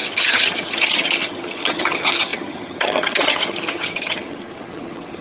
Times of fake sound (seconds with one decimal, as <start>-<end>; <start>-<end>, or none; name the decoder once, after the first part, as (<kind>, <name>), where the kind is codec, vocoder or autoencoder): 0.0-5.2 (vocoder, HiFi-GAN)